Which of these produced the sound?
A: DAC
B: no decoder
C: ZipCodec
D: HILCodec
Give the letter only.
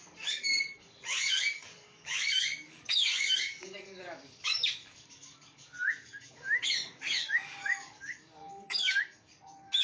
A